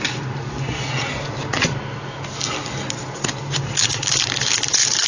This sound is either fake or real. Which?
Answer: real